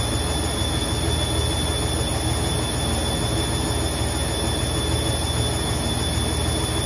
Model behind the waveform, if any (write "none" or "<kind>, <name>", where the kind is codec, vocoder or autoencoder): none